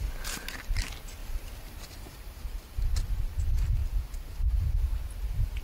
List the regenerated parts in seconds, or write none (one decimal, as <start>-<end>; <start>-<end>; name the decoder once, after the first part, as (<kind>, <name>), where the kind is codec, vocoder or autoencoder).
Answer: 1.2-3.4 (vocoder, BigVGAN v2); 3.8-4.7

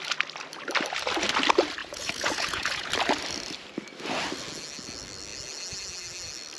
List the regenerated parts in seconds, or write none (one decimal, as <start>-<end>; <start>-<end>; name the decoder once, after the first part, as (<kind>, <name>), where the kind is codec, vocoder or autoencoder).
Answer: 1.8-2.9 (vocoder, Vocos)

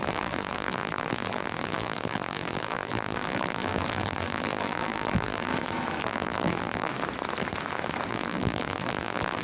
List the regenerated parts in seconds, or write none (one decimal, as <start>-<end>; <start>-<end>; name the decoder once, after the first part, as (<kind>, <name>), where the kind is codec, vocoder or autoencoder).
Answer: 0.0-5.5 (vocoder, BigVGAN v2); 6.0-6.9; 8.1-9.4

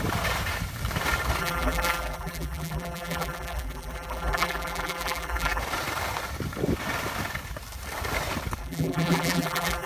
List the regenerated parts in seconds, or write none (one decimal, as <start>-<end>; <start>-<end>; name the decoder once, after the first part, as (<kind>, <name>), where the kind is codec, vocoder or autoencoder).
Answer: 1.4-5.6 (vocoder, BigVGAN v2); 8.6-9.9

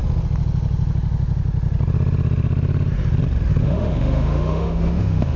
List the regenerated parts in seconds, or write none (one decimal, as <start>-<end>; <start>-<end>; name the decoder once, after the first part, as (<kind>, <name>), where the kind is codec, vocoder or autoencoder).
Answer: 3.6-5.4 (autoencoder, DAC-VAE)

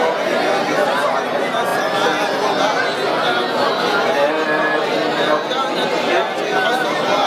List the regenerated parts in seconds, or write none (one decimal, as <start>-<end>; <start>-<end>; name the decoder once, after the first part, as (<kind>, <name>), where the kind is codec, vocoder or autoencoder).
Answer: none

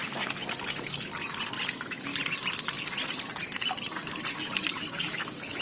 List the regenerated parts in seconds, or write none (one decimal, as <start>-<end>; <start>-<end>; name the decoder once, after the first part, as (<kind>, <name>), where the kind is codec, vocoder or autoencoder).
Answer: 1.7-2.1 (autoencoder, DAC-VAE); 4.8-5.6

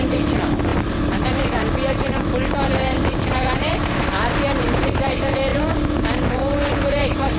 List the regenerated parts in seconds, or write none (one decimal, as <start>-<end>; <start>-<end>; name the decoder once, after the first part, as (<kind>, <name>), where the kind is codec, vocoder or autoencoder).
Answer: none